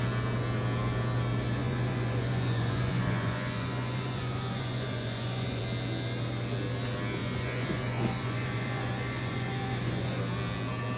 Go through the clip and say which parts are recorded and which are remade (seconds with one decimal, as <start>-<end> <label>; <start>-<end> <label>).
0.0-1.6 recorded; 1.6-5.6 remade; 5.6-7.2 recorded; 7.2-10.2 remade; 10.2-11.0 recorded